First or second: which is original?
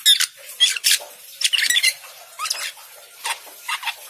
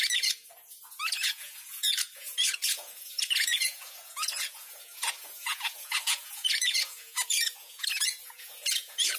first